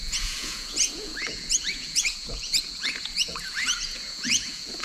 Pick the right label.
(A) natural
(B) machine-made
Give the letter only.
B